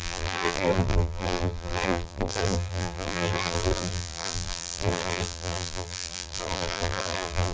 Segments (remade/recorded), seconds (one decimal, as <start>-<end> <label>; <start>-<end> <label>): 0.0-7.5 remade